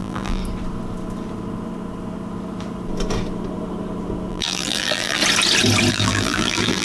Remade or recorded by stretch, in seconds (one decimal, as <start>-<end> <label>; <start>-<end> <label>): 0.0-0.4 remade; 0.4-4.3 recorded; 4.3-5.2 remade; 5.2-5.9 recorded; 5.9-6.8 remade

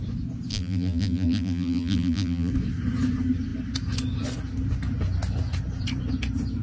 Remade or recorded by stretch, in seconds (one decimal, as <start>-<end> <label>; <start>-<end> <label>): 0.0-0.5 recorded; 0.5-2.5 remade; 2.5-6.6 recorded

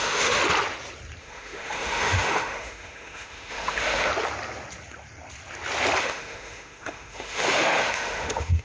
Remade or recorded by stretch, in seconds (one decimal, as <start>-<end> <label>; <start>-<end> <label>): 0.0-0.4 remade; 0.4-1.2 recorded; 1.2-4.1 remade; 4.1-6.0 recorded; 6.0-8.6 remade

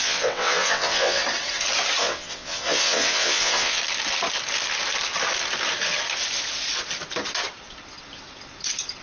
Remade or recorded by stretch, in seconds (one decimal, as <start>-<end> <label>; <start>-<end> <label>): 0.0-1.2 remade; 1.2-2.0 recorded; 2.0-3.8 remade; 3.8-9.0 recorded